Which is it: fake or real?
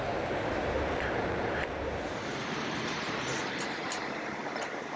fake